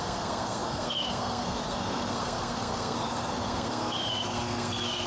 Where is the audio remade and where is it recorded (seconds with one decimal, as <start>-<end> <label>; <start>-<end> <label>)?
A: 0.0-5.1 remade